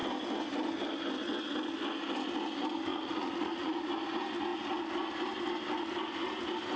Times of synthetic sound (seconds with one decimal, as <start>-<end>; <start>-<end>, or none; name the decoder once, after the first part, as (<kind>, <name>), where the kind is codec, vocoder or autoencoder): 2.9-3.9 (vocoder, Vocos)